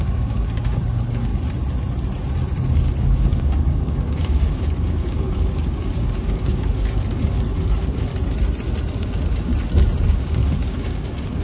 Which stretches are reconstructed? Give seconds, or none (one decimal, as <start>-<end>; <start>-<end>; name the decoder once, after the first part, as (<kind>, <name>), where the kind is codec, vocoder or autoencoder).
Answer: 0.0-1.3 (codec, DAC); 3.0-8.1; 9.0-9.5; 10.1-11.4